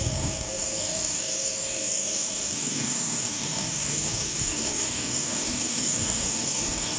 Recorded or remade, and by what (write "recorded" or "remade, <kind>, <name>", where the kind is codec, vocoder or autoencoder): remade, codec, DAC